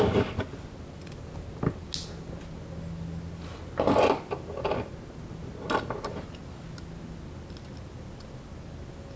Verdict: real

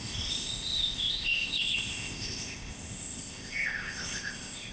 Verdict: fake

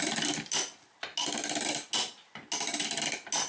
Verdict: real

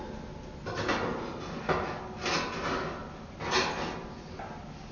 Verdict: real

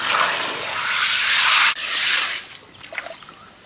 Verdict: real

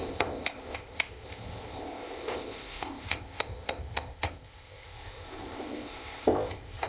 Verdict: fake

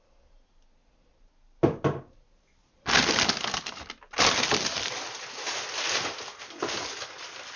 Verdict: real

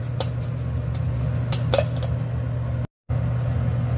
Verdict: real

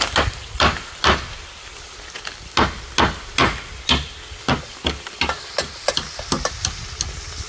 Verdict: real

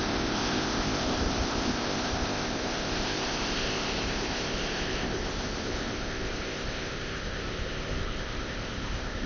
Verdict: fake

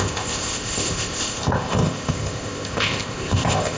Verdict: fake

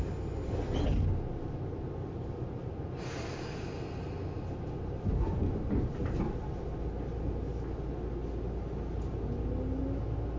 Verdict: real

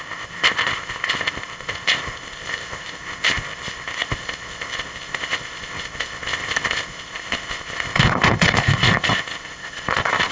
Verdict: fake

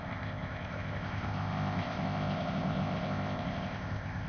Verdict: fake